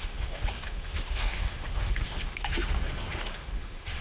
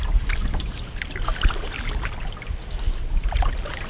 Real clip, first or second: second